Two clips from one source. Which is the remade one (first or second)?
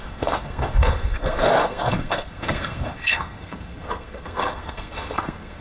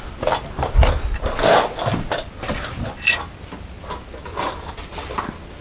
first